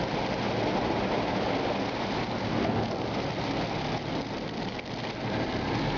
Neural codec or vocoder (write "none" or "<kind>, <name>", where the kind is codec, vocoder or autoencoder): none